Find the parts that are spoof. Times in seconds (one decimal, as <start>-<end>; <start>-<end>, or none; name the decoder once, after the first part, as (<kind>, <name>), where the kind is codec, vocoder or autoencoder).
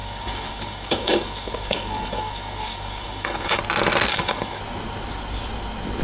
0.0-3.6 (codec, DAC); 4.1-4.6